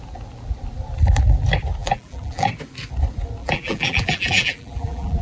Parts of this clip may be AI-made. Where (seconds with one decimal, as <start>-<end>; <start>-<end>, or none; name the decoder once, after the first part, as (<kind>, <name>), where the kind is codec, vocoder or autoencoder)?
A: 1.8-2.5 (vocoder, BigVGAN v2); 3.4-5.2